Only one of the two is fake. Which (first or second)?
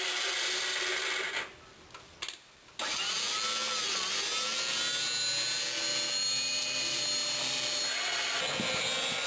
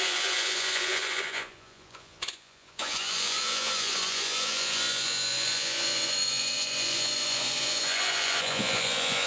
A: second